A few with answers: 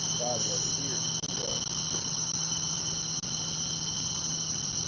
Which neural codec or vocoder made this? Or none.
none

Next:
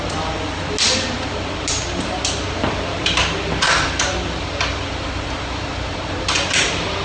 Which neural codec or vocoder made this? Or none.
none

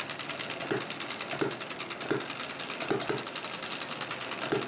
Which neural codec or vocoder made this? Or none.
none